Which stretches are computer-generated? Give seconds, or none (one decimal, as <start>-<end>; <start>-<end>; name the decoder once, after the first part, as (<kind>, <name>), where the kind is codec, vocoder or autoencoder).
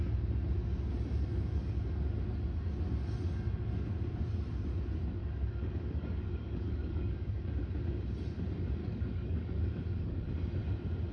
1.3-1.8 (codec, DAC); 5.2-7.5; 8.8-10.3